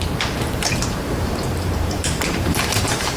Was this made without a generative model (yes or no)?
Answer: no